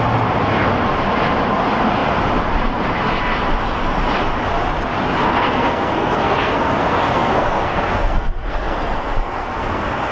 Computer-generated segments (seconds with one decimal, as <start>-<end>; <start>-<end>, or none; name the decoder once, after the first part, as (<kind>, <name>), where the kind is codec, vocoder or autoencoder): 5.2-10.1 (codec, SNAC)